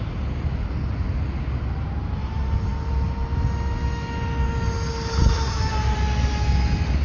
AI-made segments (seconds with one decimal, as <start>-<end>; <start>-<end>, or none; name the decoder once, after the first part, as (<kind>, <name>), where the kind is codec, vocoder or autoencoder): none